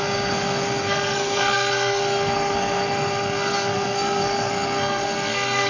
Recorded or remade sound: remade